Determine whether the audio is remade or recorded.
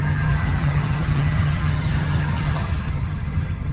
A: remade